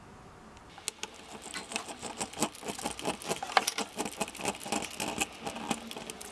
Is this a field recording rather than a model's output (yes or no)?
yes